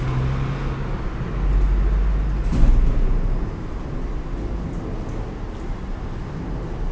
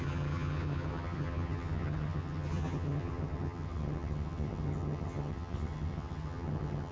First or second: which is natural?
first